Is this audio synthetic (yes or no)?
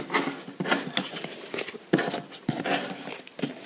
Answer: no